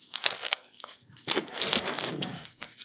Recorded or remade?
remade